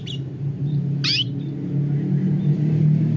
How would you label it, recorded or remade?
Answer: recorded